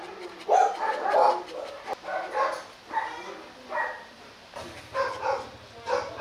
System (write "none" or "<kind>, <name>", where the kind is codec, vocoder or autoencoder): none